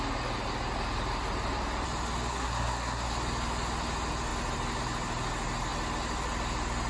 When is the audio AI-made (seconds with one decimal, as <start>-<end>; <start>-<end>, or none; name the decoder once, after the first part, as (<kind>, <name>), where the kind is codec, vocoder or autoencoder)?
2.3-3.1 (codec, SNAC)